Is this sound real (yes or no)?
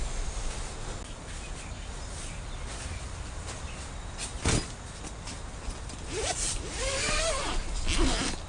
yes